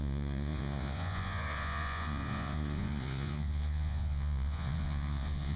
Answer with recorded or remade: remade